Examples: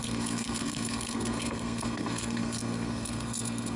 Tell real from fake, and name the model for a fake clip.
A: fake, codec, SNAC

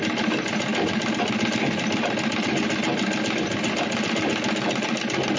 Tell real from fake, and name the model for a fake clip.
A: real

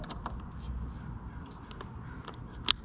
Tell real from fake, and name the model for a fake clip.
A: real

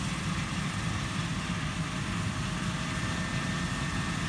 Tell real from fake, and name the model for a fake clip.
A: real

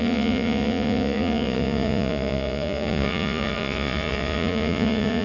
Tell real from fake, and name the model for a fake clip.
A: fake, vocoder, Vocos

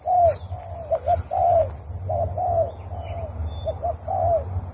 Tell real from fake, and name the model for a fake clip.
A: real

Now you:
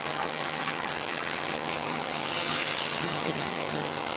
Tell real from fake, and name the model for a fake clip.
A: fake, vocoder, HiFi-GAN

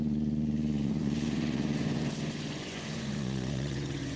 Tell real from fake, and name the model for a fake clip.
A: fake, vocoder, Vocos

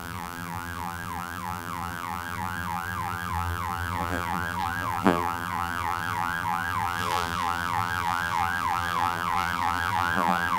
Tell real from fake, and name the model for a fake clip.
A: fake, vocoder, BigVGAN v2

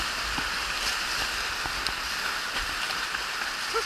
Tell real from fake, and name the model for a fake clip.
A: real